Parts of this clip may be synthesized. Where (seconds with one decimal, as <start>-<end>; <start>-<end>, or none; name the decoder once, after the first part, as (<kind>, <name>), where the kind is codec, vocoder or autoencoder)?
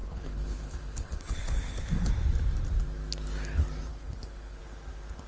0.0-2.1 (codec, HILCodec); 3.9-4.6